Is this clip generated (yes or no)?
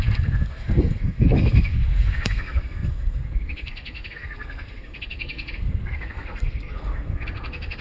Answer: yes